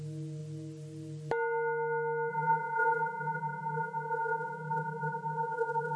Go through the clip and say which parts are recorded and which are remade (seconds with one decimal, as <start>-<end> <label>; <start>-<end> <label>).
0.0-2.3 recorded; 2.3-6.0 remade